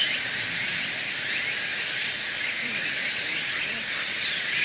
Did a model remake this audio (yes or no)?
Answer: yes